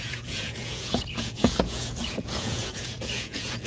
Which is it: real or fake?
fake